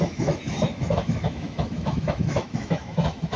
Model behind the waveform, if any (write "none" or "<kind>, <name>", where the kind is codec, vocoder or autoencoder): autoencoder, DAC-VAE